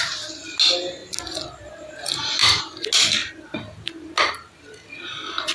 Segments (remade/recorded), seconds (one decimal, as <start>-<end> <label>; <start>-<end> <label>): 0.0-5.5 recorded